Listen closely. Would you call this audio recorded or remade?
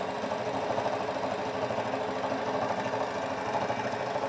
recorded